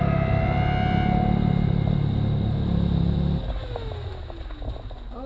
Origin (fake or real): real